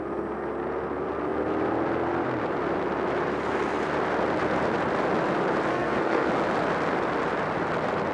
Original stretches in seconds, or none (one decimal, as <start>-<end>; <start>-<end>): 0.0-5.7; 6.3-8.1